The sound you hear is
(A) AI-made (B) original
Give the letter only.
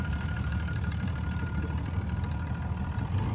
B